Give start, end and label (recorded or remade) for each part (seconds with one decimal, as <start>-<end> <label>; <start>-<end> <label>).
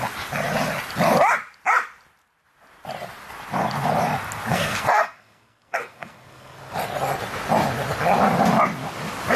0.0-4.5 recorded; 4.5-6.6 remade; 6.6-9.4 recorded